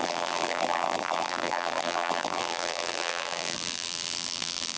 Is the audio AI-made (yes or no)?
yes